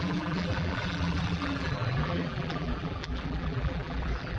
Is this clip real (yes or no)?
no